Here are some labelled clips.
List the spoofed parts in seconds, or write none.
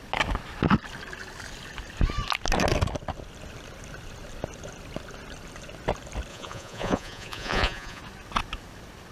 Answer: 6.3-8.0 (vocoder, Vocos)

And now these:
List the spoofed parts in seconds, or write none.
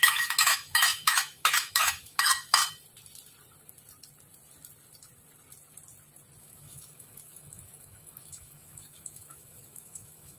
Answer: 0.0-2.6 (autoencoder, DAC-VAE); 6.4-10.4